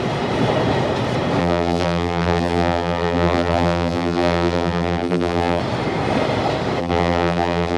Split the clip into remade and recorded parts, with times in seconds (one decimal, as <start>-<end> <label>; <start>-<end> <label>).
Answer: 0.0-1.4 recorded; 1.4-5.6 remade; 5.6-6.8 recorded; 6.8-7.8 remade